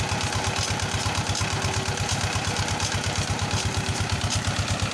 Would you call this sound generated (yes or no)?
no